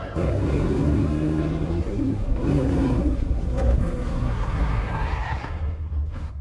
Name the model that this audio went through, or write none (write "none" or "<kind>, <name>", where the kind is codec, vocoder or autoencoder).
codec, SNAC